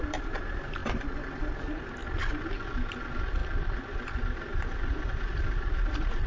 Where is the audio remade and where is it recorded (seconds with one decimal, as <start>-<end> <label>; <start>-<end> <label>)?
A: 0.0-6.3 recorded